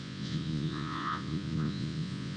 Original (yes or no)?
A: no